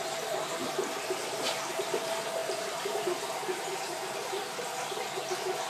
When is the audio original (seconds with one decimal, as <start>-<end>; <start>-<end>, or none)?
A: 0.0-2.4; 4.6-5.7

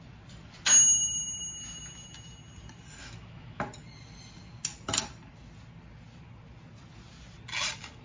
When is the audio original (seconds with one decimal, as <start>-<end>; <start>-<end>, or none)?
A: 0.0-3.0; 3.6-8.0